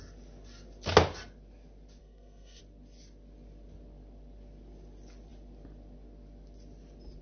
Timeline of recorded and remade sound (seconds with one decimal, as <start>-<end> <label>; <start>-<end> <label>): 0.0-2.0 recorded; 2.0-2.6 remade; 2.6-7.2 recorded